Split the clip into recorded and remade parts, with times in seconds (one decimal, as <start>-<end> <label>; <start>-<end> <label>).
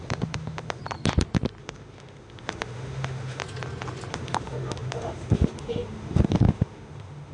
0.0-0.8 remade; 0.8-1.6 recorded; 1.6-3.4 remade; 3.4-4.1 recorded; 4.1-7.3 remade